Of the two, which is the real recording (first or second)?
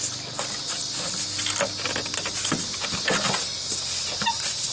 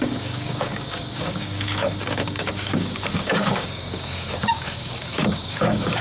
first